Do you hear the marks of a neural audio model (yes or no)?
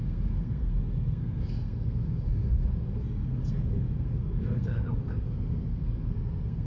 yes